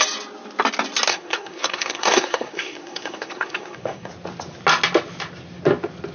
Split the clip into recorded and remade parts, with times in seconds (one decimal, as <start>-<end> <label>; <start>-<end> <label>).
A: 0.0-1.1 recorded; 1.1-4.1 remade; 4.1-6.1 recorded